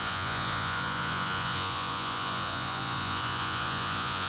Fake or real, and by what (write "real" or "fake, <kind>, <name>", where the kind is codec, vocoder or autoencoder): fake, vocoder, Vocos